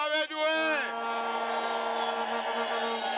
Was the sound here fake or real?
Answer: real